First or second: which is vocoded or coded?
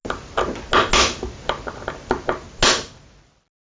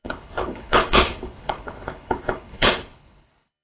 second